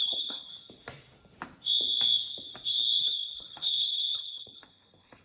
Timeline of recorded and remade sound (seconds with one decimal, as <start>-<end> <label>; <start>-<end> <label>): 0.0-0.5 remade; 0.5-3.0 recorded; 3.0-5.2 remade